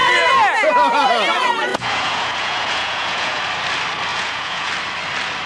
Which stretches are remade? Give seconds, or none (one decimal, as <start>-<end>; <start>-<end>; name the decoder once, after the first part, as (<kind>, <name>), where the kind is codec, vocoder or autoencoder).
1.7-3.4 (vocoder, Vocos); 4.1-4.7